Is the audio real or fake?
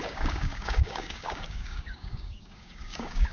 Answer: fake